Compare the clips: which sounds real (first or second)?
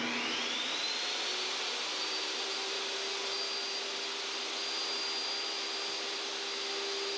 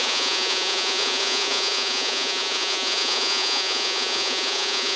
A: first